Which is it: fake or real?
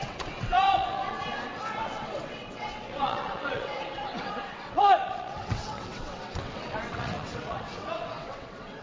fake